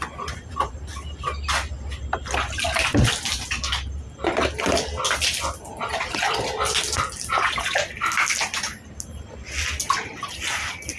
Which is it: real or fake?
real